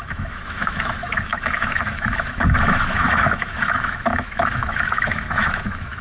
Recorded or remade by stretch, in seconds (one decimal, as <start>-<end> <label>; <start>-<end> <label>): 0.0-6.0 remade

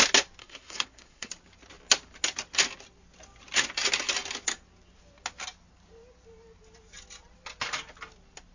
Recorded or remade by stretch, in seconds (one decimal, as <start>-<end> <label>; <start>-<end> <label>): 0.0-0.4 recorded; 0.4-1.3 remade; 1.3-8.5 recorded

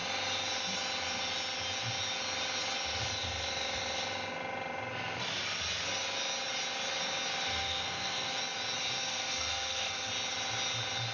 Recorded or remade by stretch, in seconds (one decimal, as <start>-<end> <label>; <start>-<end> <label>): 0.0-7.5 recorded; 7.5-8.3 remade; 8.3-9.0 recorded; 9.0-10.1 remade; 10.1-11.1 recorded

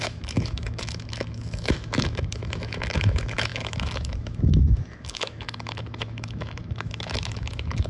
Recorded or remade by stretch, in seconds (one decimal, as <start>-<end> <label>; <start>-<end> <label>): 0.0-7.9 remade

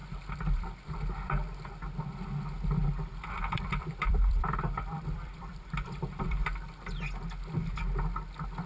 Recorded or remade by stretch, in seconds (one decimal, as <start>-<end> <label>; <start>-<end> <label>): 0.0-0.9 remade; 0.9-2.8 recorded; 2.8-6.5 remade; 6.5-8.7 recorded

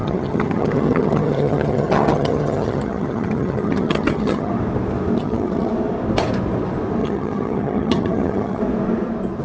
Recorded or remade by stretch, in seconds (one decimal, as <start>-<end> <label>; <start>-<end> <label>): 0.0-4.5 remade; 4.5-5.2 recorded; 5.2-5.7 remade; 5.7-7.0 recorded; 7.0-8.6 remade; 8.6-9.4 recorded